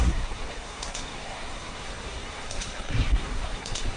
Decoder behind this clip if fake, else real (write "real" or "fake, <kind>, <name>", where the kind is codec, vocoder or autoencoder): fake, codec, SNAC